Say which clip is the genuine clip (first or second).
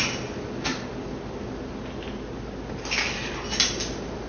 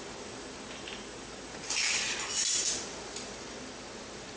first